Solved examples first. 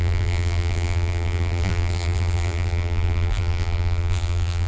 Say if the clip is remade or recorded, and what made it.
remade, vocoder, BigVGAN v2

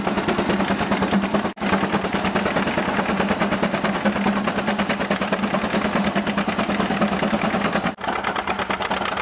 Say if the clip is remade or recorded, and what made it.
recorded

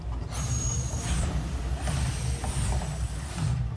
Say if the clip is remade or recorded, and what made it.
recorded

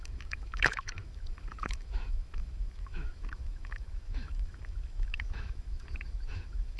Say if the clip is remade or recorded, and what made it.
remade, autoencoder, DAC-VAE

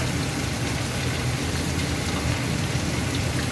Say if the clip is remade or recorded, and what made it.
recorded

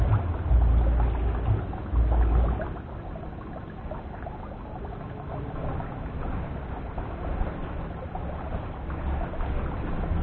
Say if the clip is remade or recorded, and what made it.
recorded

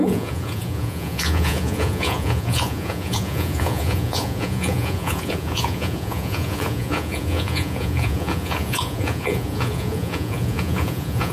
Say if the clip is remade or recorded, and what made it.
remade, vocoder, Vocos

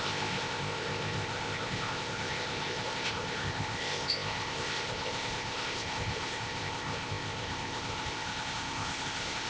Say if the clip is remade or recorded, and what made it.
remade, codec, ZipCodec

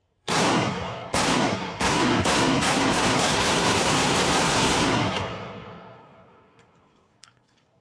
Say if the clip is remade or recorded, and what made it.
remade, codec, SNAC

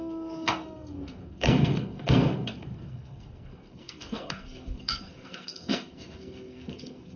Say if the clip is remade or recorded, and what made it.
remade, codec, SNAC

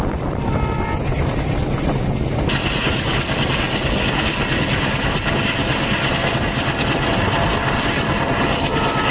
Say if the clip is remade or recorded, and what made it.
recorded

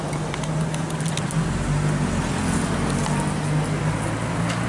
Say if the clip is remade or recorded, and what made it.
recorded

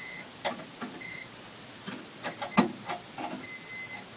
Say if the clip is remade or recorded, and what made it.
recorded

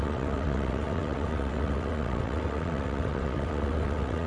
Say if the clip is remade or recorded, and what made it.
remade, vocoder, WaveNeXt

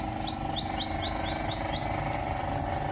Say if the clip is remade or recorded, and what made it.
recorded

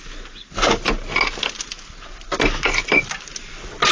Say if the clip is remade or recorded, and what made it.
recorded